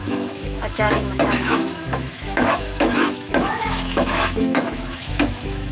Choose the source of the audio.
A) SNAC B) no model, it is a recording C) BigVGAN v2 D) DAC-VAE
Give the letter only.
D